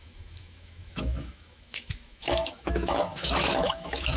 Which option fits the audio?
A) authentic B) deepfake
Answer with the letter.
B